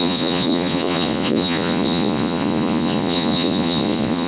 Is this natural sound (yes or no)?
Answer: no